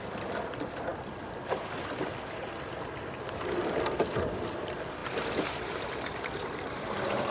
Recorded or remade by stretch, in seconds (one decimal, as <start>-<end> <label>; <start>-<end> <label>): 0.0-0.9 remade; 0.9-4.0 recorded; 4.0-7.3 remade